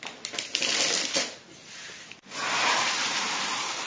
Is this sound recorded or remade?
recorded